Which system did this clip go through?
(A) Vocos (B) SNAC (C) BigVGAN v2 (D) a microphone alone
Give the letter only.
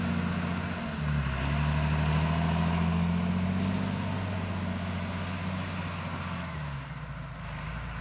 D